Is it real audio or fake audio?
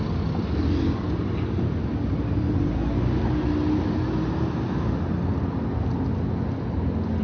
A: real